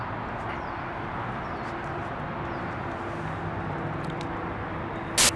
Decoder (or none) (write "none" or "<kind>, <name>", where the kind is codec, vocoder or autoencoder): none